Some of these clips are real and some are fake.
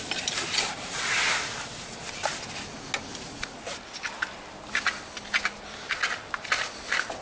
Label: real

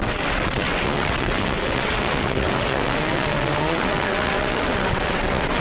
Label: fake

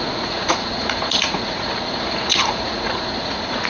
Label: fake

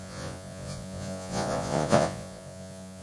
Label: fake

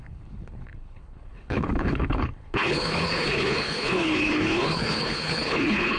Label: fake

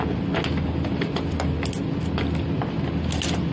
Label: real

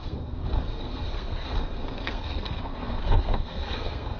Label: fake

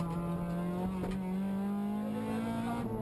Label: real